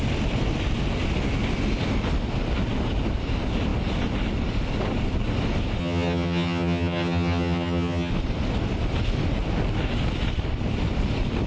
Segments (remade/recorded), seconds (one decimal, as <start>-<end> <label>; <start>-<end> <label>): 0.0-5.8 recorded; 5.8-8.1 remade; 8.1-11.5 recorded